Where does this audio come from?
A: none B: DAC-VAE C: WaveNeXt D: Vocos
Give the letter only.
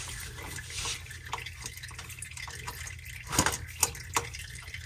A